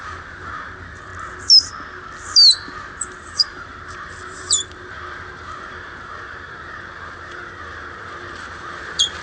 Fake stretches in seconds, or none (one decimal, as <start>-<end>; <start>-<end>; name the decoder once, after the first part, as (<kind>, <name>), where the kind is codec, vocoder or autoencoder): 0.0-1.1 (vocoder, BigVGAN v2); 3.1-9.2